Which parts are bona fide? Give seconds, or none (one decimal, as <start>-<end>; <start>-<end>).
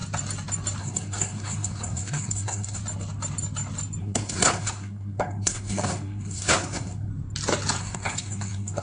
0.0-0.8; 2.8-4.0; 7.1-7.8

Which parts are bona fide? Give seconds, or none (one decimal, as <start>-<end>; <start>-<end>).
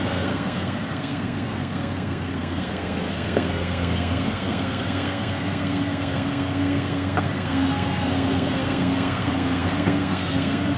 none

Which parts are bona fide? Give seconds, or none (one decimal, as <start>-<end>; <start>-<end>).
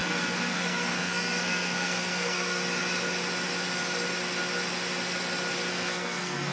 2.6-5.7